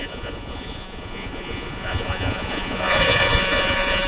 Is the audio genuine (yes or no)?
no